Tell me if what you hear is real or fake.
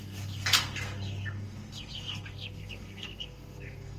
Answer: fake